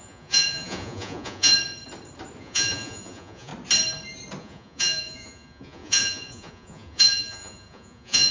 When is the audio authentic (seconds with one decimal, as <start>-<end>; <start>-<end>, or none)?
1.5-2.4; 3.5-4.4